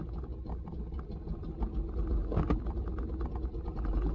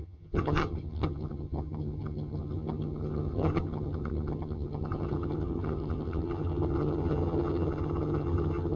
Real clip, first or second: first